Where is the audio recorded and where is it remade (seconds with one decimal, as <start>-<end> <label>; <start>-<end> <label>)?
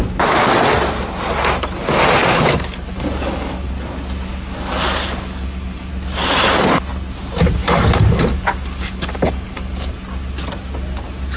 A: 0.0-2.2 recorded; 2.2-3.7 remade; 3.7-4.3 recorded; 4.3-5.9 remade; 5.9-7.6 recorded; 7.6-9.9 remade; 9.9-11.4 recorded